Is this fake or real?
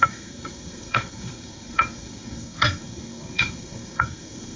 fake